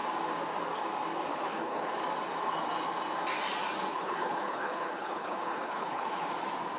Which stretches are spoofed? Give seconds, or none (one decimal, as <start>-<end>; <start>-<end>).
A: 1.3-1.9; 3.9-6.3